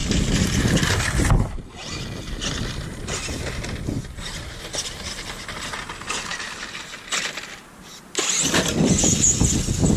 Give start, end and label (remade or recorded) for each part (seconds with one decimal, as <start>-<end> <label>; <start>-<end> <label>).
0.0-10.0 recorded